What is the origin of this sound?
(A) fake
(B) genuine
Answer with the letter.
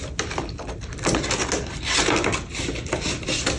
B